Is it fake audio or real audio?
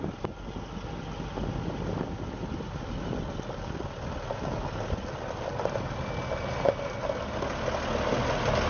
real